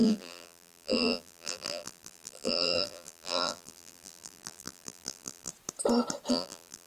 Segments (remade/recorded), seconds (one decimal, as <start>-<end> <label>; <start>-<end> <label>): 0.0-5.5 remade; 5.5-6.3 recorded; 6.3-6.9 remade